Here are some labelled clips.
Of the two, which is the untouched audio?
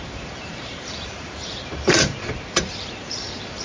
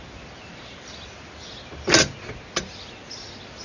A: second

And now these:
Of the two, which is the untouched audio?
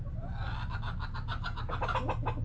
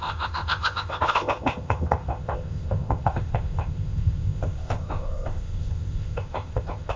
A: first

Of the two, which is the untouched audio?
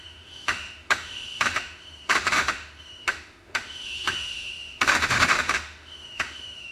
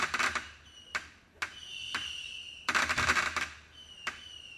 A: second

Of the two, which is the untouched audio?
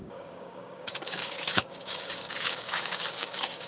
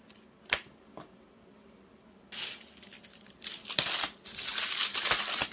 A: second